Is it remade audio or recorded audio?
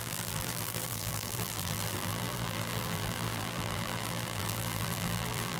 remade